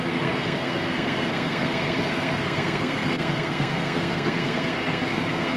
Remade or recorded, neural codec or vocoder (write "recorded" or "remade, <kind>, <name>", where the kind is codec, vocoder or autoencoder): remade, codec, SNAC